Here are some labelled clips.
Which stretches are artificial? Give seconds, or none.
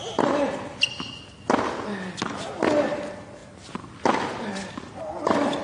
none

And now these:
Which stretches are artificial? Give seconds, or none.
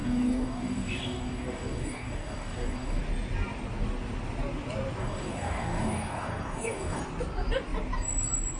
0.0-3.0 (codec, DAC); 5.0-7.0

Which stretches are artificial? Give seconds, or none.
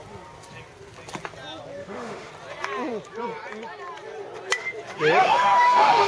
1.8-2.3 (autoencoder, DAC-VAE); 5.2-6.1